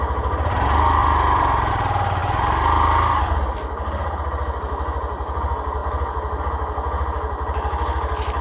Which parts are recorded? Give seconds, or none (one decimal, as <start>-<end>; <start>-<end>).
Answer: 0.0-1.0; 1.7-8.4